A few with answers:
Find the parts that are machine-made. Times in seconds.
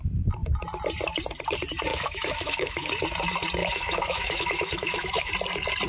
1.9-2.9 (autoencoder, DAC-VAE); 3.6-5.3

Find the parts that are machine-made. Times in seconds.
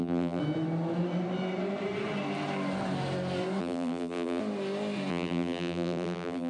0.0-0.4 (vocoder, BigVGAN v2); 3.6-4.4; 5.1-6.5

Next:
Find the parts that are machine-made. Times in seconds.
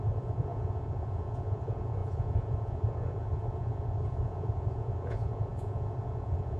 0.0-6.6 (vocoder, Vocos)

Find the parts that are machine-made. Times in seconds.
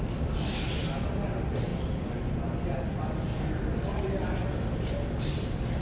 none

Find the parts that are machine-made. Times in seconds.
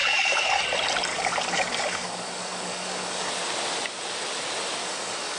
0.0-0.6 (codec, DAC); 1.1-3.3; 4.8-5.4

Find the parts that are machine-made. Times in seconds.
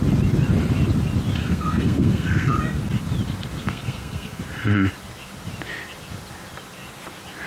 1.4-2.8 (codec, SNAC); 3.6-4.4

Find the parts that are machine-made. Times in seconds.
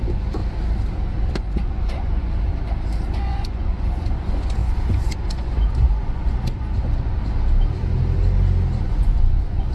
0.0-0.4 (vocoder, Vocos); 1.4-2.5; 3.1-7.2; 8.8-9.7